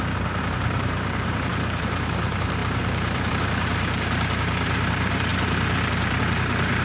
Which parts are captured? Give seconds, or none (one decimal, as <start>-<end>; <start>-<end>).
5.3-6.2